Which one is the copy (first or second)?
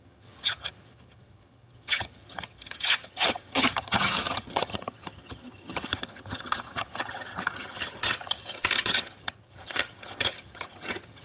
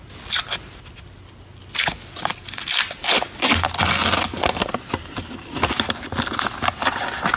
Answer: first